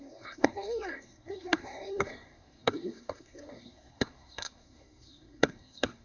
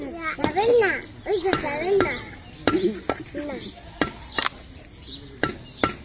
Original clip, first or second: second